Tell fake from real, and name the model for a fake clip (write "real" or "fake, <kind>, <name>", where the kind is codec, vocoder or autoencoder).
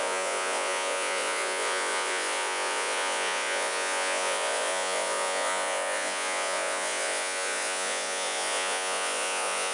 fake, vocoder, Vocos